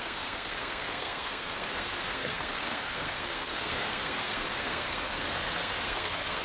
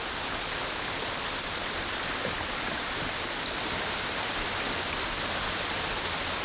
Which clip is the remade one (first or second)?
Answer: first